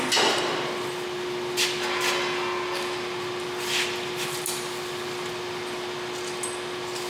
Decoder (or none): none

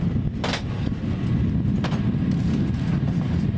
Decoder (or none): none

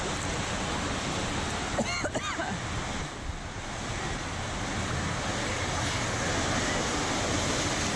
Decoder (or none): none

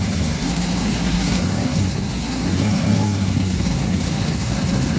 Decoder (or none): codec, SNAC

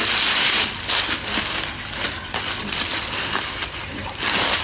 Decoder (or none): none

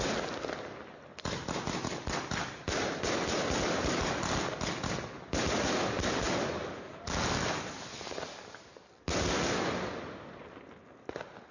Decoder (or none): none